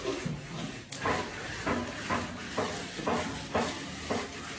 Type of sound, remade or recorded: recorded